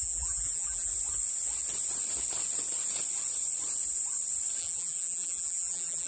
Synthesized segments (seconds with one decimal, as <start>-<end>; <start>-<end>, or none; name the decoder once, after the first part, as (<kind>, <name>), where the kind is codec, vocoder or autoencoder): 0.0-0.9 (vocoder, BigVGAN v2); 4.6-6.1